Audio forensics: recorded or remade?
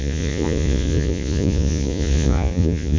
remade